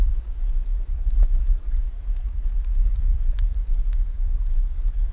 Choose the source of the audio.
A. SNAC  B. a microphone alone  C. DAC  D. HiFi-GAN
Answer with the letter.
C